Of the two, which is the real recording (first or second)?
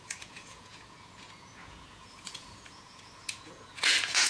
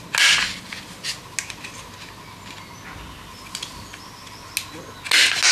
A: second